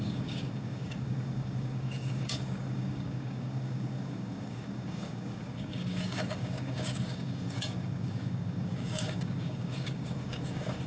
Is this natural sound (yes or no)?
no